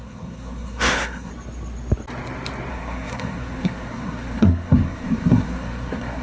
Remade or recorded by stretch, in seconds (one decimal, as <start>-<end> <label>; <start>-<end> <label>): 0.0-1.3 remade; 1.3-2.7 recorded; 2.7-6.2 remade